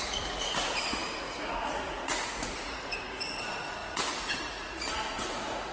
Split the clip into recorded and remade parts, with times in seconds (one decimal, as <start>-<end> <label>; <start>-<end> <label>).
0.0-5.7 remade